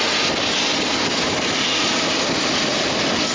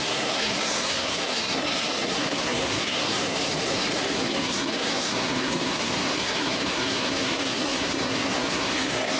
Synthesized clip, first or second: second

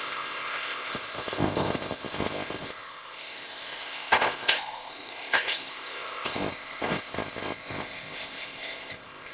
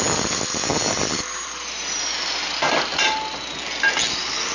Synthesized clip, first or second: first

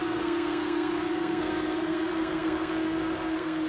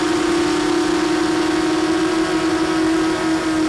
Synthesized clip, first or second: first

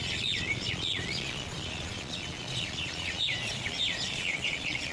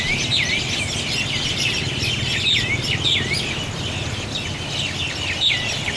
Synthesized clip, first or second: first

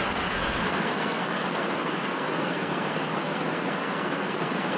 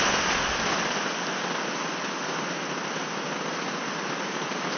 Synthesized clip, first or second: first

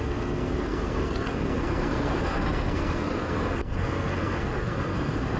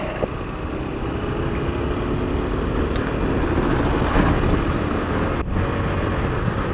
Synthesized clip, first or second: first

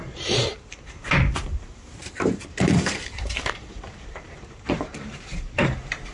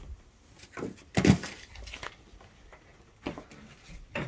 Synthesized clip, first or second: first